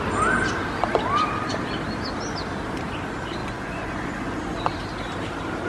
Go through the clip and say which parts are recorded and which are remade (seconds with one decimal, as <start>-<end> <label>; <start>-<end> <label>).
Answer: 0.0-3.4 recorded; 3.4-4.6 remade; 4.6-5.7 recorded